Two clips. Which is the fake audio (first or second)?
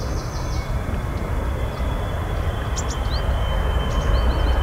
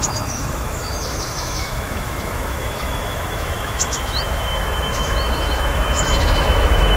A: second